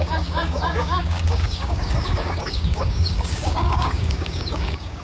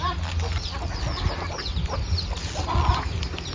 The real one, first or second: second